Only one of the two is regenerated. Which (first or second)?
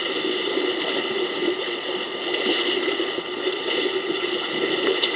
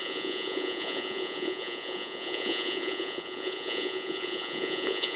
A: second